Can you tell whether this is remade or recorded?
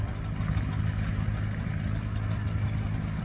recorded